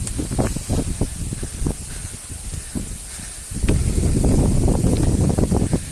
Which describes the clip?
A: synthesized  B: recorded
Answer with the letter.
B